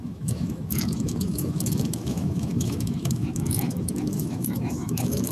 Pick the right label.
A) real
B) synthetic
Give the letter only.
B